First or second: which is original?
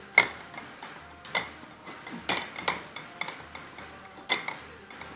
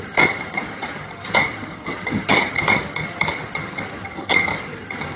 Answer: first